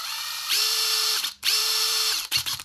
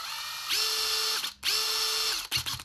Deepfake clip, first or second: first